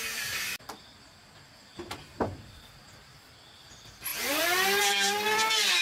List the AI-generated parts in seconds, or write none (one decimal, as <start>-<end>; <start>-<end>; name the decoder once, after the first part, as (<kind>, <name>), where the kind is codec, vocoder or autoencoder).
0.0-4.1 (vocoder, BigVGAN v2); 4.9-5.8